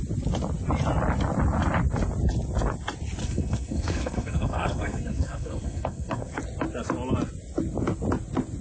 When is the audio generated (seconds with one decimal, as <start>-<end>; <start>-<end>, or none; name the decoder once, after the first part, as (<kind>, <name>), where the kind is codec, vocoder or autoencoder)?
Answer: 3.2-6.4 (codec, SNAC)